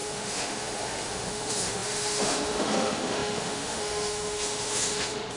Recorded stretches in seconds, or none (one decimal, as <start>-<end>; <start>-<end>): none